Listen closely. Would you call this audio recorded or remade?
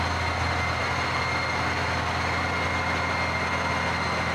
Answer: recorded